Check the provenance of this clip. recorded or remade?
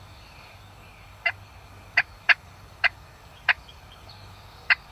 remade